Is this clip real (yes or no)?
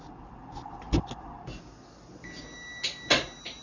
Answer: yes